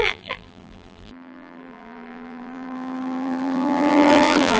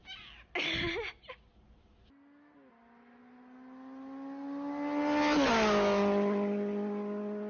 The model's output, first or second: first